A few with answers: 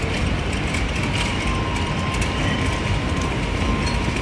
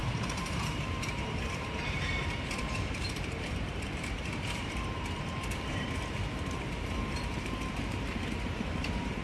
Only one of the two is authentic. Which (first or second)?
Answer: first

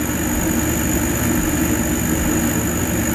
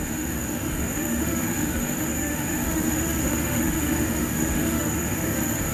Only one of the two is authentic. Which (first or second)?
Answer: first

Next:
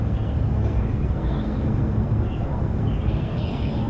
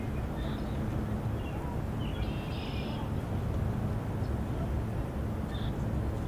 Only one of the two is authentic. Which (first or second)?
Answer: second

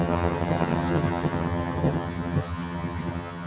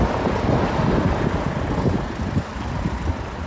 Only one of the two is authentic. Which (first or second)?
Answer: second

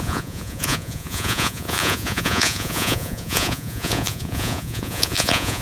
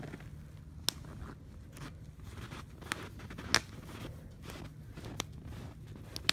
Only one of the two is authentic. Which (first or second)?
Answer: second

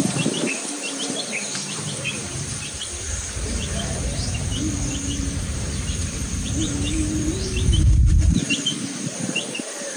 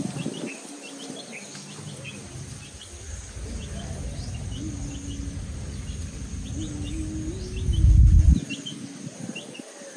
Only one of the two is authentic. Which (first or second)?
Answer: second